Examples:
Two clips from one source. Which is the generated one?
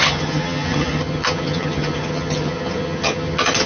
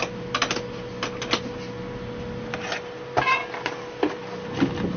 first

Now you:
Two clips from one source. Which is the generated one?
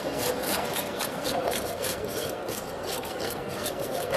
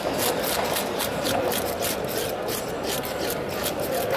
first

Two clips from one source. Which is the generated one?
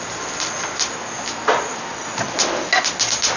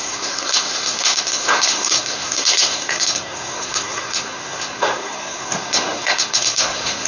second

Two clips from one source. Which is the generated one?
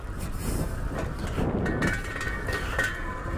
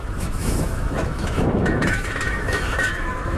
second